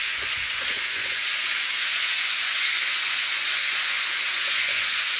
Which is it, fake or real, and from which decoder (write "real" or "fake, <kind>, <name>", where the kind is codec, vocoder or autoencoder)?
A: fake, vocoder, Vocos